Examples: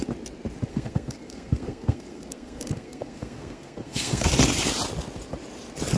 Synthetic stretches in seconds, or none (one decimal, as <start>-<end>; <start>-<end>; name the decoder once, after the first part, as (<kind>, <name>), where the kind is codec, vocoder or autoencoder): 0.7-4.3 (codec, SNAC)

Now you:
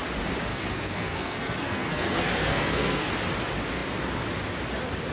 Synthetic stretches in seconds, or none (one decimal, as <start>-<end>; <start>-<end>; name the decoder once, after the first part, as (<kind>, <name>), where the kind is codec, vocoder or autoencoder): 0.5-3.1 (codec, SNAC)

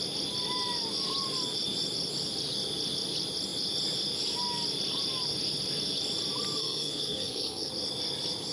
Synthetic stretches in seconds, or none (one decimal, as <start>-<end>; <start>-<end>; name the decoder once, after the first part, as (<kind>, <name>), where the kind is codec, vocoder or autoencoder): 6.6-7.7 (codec, SNAC)